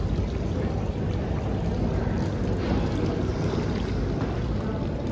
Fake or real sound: real